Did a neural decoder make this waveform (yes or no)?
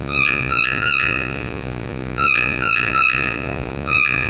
yes